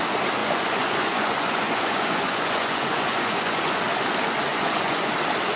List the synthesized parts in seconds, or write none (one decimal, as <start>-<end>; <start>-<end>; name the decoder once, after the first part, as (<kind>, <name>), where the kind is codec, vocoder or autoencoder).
0.4-3.8 (vocoder, Vocos); 4.5-5.1